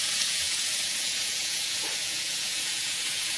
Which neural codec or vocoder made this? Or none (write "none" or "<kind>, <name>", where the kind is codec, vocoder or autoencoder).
vocoder, Vocos